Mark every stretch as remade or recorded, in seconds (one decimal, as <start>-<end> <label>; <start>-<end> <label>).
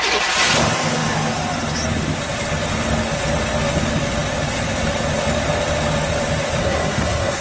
0.0-6.6 recorded; 6.6-7.4 remade